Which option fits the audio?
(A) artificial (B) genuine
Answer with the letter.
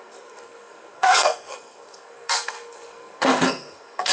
A